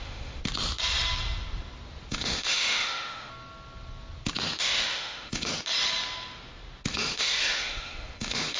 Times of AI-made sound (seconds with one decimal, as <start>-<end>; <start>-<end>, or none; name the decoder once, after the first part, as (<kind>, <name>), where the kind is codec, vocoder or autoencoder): 0.0-0.4 (autoencoder, DAC-VAE); 2.1-3.3; 4.6-5.5; 6.9-8.6